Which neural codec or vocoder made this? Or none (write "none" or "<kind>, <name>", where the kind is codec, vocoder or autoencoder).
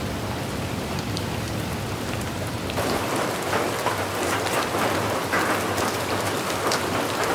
vocoder, BigVGAN v2